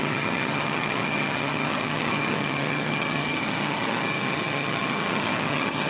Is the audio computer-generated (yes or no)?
yes